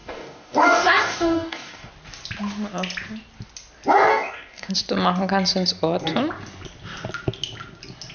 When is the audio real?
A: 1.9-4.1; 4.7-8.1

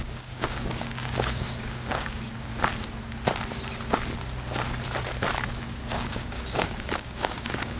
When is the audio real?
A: 2.5-5.6